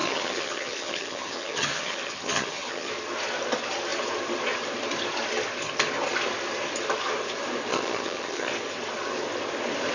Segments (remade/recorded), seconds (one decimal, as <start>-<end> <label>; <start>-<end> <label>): 0.0-2.9 remade; 2.9-7.7 recorded; 7.7-8.5 remade; 8.5-9.9 recorded